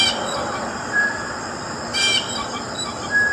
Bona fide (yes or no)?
no